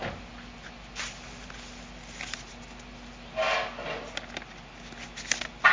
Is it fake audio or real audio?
real